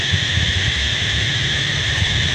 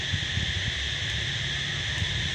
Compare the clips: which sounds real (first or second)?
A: second